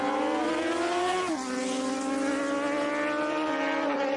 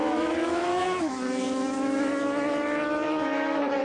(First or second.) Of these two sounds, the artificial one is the second